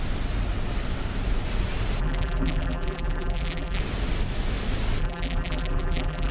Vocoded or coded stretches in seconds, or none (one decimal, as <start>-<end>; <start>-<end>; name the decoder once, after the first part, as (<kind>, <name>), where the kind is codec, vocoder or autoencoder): 2.0-3.8 (vocoder, BigVGAN v2); 5.0-6.3